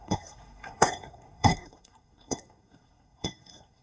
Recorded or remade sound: remade